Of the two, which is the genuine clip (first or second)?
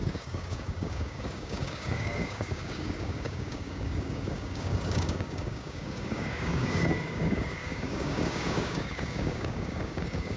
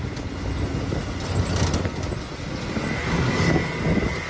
second